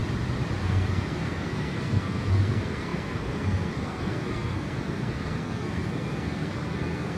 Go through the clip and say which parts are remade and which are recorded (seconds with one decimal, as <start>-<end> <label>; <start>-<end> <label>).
0.0-0.6 recorded; 0.6-7.2 remade